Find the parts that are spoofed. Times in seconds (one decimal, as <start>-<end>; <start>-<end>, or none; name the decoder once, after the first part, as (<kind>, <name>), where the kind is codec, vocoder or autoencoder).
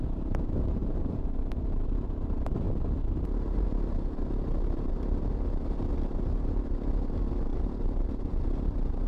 0.8-1.5 (vocoder, BigVGAN v2); 7.5-8.0